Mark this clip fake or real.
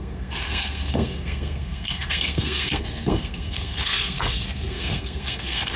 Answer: fake